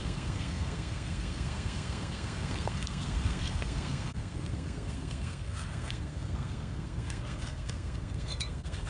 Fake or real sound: fake